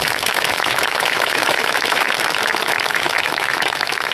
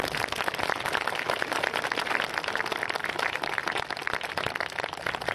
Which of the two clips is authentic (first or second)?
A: second